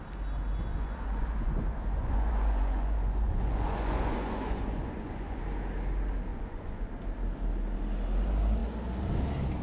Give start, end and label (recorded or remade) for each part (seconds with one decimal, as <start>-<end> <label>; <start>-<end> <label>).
0.0-0.7 recorded; 0.7-5.4 remade; 5.4-6.3 recorded; 6.3-6.9 remade; 6.9-9.6 recorded